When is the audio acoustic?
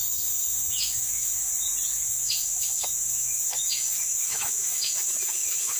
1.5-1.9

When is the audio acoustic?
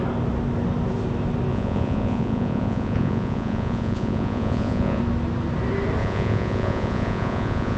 0.0-1.5; 5.0-6.0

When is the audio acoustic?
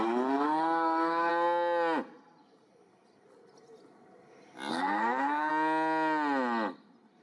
1.3-4.7; 5.5-7.2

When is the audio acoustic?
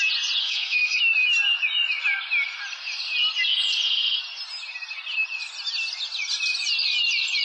0.0-0.4; 1.0-7.4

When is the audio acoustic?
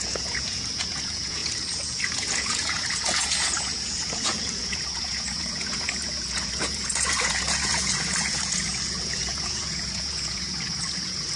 none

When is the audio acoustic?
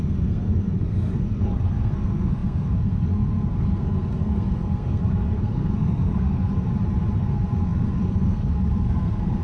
6.7-7.2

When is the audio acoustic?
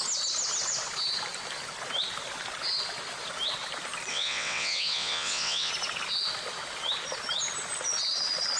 0.0-4.1; 5.7-8.6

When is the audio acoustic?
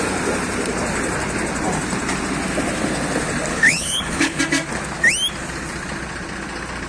0.0-3.5; 4.4-6.9